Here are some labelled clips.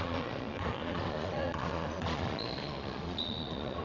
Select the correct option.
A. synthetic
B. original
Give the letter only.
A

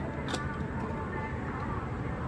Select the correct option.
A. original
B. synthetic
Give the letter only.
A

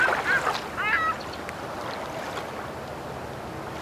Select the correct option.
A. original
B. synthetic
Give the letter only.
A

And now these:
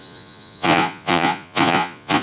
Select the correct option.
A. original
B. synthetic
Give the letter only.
B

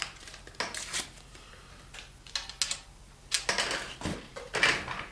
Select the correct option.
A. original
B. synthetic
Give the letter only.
A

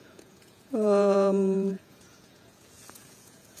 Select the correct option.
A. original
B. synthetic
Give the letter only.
B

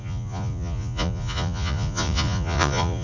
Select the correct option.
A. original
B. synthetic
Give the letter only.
B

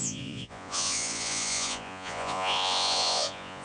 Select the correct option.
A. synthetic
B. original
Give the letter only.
A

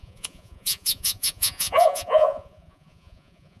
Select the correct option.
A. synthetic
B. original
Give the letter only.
A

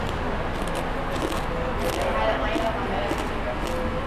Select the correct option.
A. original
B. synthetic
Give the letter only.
A